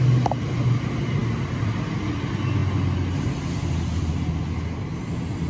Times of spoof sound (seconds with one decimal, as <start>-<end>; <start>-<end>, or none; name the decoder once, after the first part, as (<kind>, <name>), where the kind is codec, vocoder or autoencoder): none